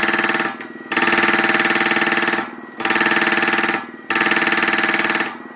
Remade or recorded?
recorded